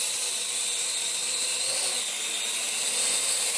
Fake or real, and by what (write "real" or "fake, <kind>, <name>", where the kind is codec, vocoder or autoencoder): real